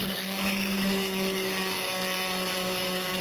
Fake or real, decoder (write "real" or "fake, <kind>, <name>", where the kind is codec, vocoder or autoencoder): fake, codec, DAC